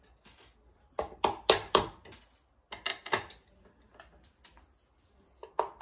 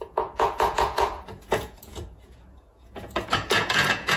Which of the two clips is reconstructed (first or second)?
second